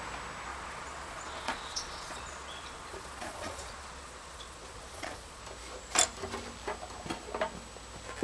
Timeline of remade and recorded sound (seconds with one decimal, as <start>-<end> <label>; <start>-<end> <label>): 0.0-0.5 recorded; 0.5-5.4 remade; 5.4-8.2 recorded